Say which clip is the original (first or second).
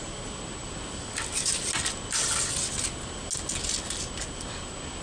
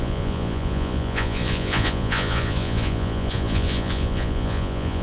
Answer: first